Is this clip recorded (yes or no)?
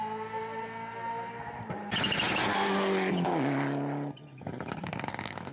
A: yes